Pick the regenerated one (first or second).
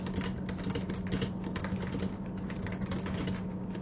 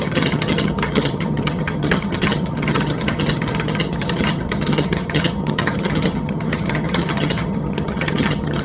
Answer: second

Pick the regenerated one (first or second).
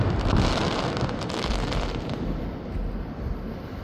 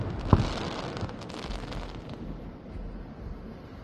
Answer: first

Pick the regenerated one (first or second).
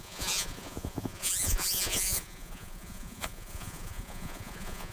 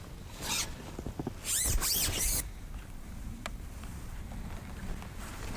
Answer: first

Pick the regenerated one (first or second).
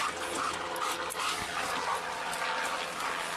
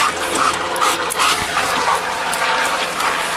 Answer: second